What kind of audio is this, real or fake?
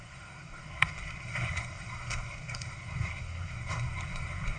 fake